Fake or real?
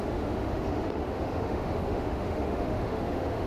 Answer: fake